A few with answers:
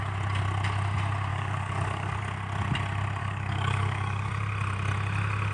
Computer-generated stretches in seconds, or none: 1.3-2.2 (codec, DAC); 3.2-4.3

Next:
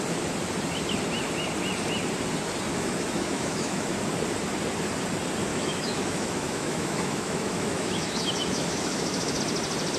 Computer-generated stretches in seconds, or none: 2.7-3.9 (autoencoder, DAC-VAE); 5.5-9.4

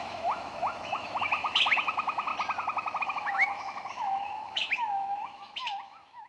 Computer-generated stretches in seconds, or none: 0.0-2.3 (autoencoder, DAC-VAE); 3.0-6.3

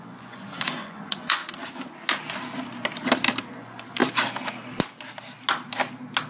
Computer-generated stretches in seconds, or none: 0.0-1.4 (vocoder, Vocos); 3.4-4.0

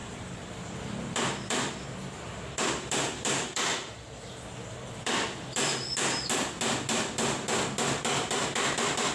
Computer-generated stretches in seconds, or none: 0.0-5.7 (vocoder, BigVGAN v2); 8.0-9.1

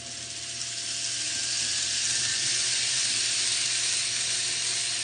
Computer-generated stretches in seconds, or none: 2.3-3.1 (vocoder, Vocos)